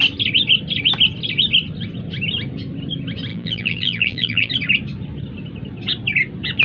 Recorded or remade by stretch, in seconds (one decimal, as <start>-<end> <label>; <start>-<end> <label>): 0.0-3.3 recorded; 3.3-4.5 remade; 4.5-6.6 recorded